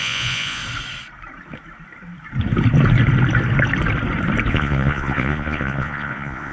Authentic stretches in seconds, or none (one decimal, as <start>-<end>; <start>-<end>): 0.6-4.5